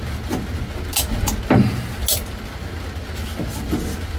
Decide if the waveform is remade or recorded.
recorded